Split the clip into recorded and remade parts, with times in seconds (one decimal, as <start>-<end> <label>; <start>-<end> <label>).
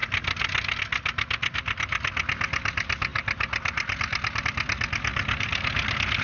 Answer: 0.0-6.2 recorded